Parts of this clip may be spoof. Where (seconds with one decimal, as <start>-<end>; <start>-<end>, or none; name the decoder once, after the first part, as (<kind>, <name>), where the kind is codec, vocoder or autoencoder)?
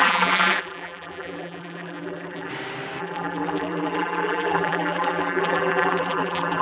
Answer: 0.0-2.5 (vocoder, BigVGAN v2); 3.0-6.6